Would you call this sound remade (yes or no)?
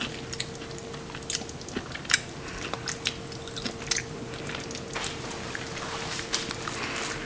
no